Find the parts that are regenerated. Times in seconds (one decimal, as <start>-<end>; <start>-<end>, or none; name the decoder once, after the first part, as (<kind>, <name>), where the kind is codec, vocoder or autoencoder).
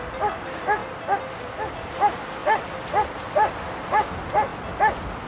none